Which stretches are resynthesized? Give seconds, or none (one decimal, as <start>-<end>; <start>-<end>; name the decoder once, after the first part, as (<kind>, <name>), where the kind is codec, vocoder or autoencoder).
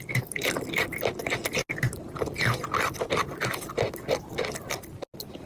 none